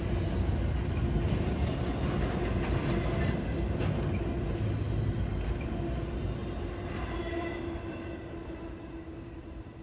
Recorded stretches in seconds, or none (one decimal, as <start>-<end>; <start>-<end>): 0.0-9.8

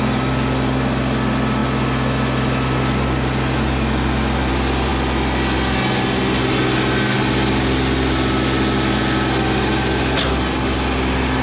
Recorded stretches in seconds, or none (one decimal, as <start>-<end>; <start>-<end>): 0.0-11.4